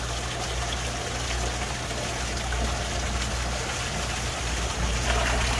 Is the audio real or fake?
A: real